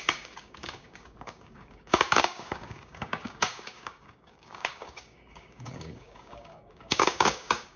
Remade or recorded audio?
remade